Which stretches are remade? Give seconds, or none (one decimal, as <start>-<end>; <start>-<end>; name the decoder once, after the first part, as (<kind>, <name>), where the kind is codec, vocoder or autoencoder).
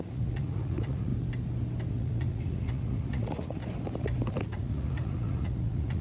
0.0-1.1 (vocoder, Vocos); 1.9-3.6; 4.4-6.0